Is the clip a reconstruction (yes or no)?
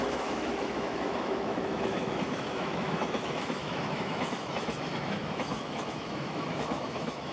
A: yes